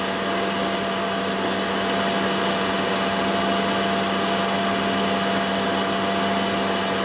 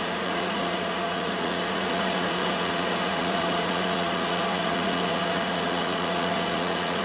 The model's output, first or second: second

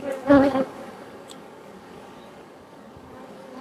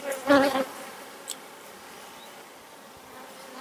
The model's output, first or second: first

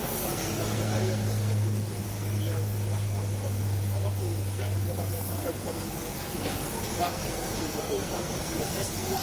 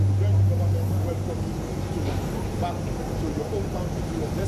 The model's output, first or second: first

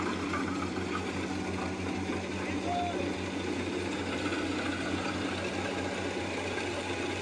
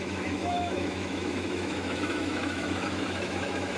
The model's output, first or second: second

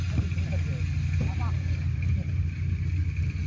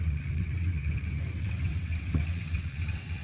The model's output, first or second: second